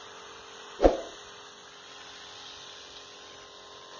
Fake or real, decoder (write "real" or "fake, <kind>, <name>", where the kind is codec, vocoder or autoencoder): real